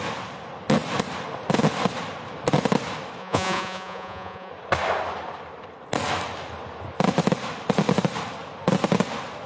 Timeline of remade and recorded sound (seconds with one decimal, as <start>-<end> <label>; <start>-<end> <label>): 0.0-3.2 recorded; 3.2-4.5 remade; 4.5-9.5 recorded